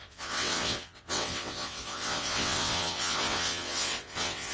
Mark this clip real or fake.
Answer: fake